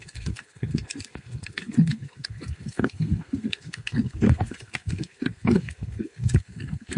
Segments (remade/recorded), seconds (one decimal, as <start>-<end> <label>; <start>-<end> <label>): 0.0-7.0 remade